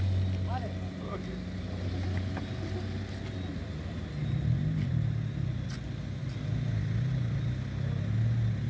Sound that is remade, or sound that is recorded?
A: recorded